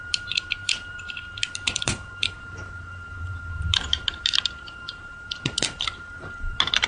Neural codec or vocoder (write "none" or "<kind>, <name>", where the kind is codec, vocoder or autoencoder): vocoder, BigVGAN v2